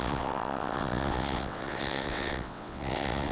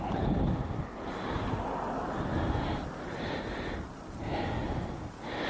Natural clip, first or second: second